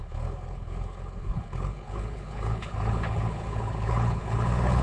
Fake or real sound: fake